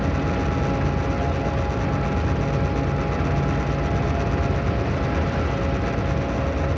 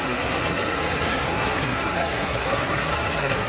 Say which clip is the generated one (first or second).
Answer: second